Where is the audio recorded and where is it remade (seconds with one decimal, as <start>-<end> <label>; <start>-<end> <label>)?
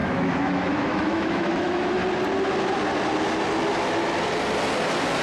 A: 0.0-2.0 remade; 2.0-5.2 recorded